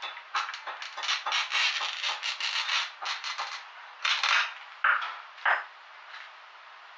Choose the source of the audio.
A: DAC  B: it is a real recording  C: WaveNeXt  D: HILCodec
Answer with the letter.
B